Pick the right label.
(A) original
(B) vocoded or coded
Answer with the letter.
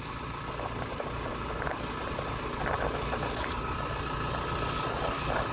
A